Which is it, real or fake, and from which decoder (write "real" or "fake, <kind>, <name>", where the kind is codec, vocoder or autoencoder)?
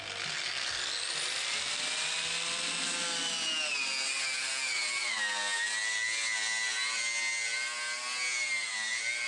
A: real